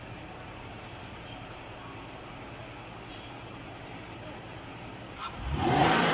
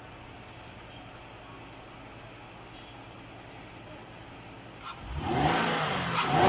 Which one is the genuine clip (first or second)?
second